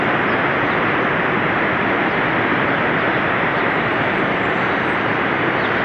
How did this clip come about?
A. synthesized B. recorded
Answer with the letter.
B